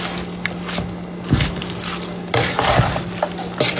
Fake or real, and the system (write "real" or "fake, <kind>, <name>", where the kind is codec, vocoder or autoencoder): real